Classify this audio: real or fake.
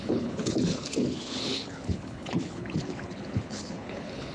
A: fake